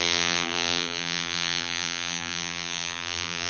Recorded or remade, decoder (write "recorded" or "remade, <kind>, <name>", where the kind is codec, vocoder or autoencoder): remade, vocoder, BigVGAN v2